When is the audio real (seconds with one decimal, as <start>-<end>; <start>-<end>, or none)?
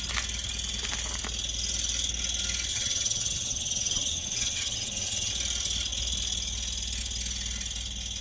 0.0-2.7; 5.3-8.2